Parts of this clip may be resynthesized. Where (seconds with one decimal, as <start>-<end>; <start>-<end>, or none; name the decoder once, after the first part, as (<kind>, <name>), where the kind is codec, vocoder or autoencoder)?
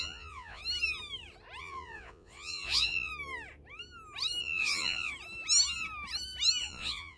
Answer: 0.0-0.6 (vocoder, Vocos); 1.6-3.1; 4.4-5.1; 6.6-7.2